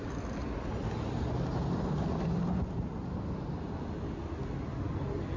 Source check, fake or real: real